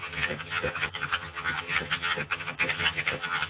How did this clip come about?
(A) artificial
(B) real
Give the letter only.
A